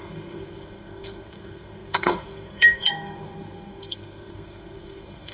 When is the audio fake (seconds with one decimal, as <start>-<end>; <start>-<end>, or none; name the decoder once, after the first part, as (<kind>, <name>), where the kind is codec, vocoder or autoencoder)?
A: 0.0-5.3 (codec, SNAC)